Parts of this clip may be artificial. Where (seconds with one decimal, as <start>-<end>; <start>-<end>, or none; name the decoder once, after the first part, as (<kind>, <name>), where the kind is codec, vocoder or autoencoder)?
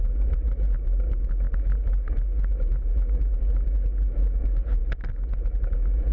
none